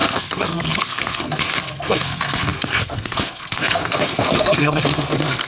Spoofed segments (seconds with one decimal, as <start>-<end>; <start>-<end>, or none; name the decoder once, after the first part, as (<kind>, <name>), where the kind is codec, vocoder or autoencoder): 0.0-5.5 (codec, SNAC)